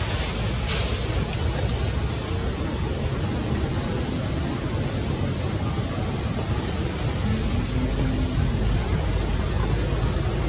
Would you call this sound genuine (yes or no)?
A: yes